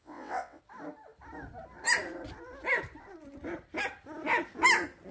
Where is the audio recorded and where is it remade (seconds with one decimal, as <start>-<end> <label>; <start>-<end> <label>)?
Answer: 0.0-0.6 remade; 0.6-5.1 recorded